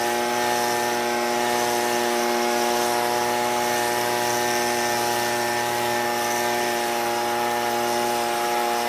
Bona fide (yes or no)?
yes